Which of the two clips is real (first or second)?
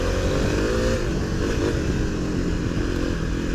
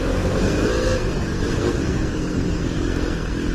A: first